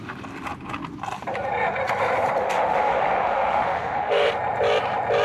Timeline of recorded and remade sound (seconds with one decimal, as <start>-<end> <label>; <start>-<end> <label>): 0.0-2.4 recorded; 2.4-4.3 remade; 4.3-5.2 recorded